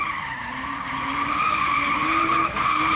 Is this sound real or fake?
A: fake